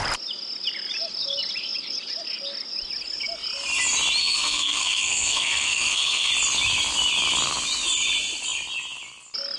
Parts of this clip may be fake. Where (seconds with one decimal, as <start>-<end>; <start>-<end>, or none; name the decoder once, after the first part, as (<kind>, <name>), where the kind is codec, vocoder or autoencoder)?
4.2-6.3 (codec, SNAC)